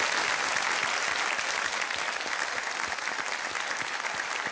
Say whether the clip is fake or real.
real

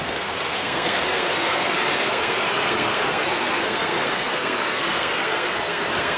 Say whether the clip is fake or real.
fake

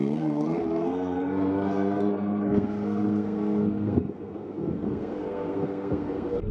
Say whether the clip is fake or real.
fake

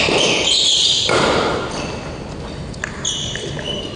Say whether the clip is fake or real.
real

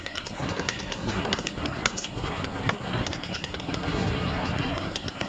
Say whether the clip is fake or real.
fake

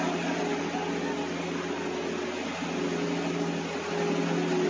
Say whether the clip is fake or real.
real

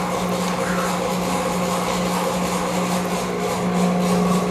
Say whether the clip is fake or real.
real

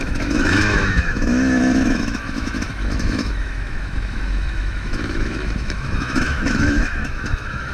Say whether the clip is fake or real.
fake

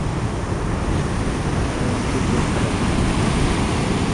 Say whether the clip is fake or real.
real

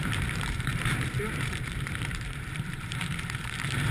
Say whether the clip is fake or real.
fake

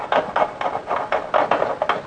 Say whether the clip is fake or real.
real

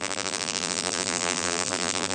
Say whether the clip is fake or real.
fake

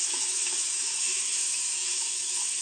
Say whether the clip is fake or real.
fake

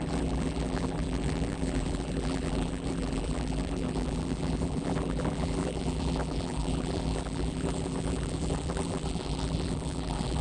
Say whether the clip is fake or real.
fake